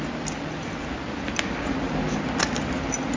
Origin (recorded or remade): recorded